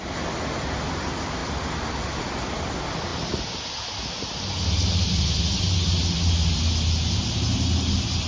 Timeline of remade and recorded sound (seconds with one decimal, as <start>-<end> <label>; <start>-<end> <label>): 0.0-8.3 recorded